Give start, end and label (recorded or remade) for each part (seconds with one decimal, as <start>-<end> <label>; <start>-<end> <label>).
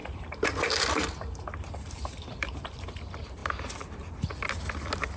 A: 0.0-2.7 remade; 2.7-5.2 recorded